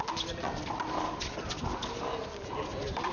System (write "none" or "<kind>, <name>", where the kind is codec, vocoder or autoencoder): none